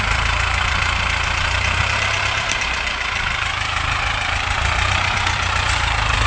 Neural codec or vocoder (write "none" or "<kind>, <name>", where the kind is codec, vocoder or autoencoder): vocoder, BigVGAN v2